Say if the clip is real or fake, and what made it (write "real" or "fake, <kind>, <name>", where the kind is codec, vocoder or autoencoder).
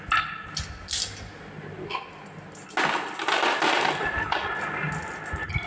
real